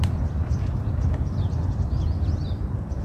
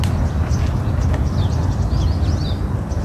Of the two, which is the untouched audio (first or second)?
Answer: second